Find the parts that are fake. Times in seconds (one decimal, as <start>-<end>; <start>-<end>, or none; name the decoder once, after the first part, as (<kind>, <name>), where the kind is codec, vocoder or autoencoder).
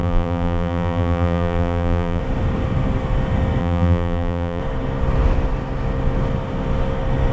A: 0.0-2.2 (vocoder, BigVGAN v2); 3.6-4.6